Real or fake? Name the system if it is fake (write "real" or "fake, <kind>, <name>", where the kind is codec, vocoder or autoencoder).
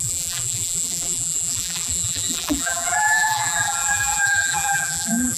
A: fake, vocoder, BigVGAN v2